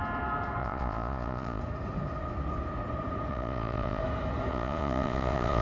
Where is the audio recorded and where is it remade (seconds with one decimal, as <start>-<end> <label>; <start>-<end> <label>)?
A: 0.0-0.6 recorded; 0.6-1.6 remade; 1.6-3.3 recorded; 3.3-4.0 remade; 4.0-4.5 recorded; 4.5-5.6 remade